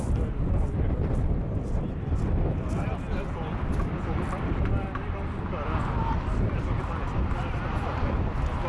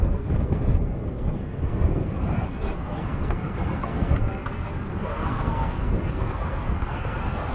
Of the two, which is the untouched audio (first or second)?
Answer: first